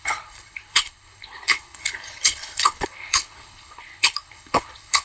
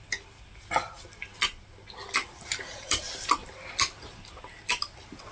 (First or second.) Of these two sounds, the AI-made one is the first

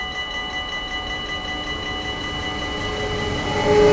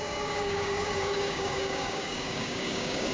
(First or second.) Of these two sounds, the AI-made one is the second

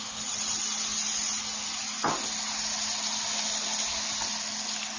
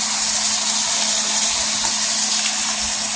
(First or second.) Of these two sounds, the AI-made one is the second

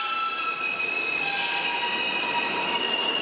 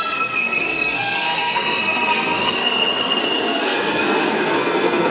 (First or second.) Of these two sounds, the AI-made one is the second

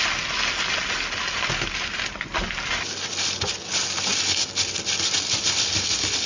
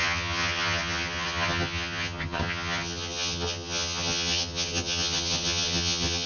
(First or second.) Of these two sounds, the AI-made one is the second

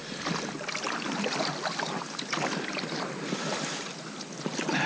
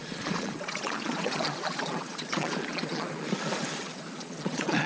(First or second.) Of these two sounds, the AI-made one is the second